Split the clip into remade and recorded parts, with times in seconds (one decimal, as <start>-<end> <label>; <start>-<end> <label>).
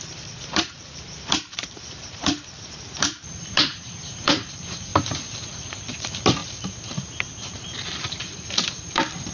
0.0-4.9 remade; 4.9-5.5 recorded; 5.5-9.3 remade